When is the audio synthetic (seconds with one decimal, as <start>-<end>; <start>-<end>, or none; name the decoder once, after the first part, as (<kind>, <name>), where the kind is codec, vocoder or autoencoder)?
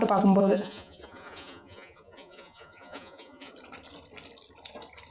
0.4-3.5 (vocoder, Vocos)